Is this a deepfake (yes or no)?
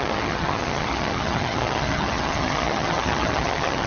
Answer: yes